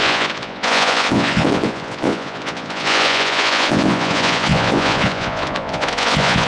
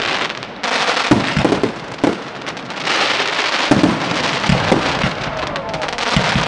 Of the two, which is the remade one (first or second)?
first